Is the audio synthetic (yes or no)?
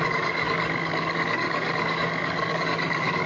yes